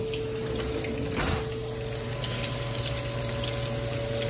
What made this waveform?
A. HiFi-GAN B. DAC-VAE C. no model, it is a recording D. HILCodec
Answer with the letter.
C